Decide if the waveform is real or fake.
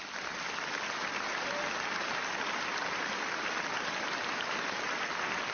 real